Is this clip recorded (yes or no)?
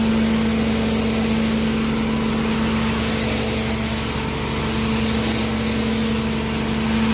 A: yes